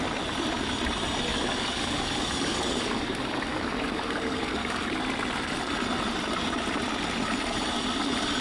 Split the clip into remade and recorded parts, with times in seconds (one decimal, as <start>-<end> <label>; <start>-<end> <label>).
0.0-1.3 recorded; 1.3-4.9 remade; 4.9-8.4 recorded